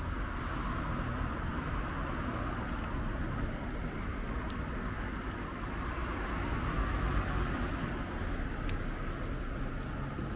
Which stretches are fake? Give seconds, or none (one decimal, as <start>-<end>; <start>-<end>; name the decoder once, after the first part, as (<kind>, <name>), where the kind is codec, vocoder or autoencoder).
none